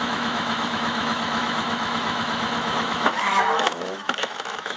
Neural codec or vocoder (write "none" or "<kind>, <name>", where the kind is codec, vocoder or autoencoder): autoencoder, DAC-VAE